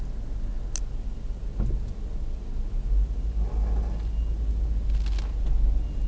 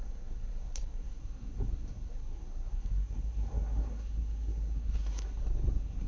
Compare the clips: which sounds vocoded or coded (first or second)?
second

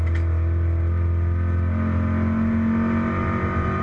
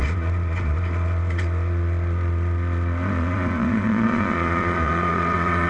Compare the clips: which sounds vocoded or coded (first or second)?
second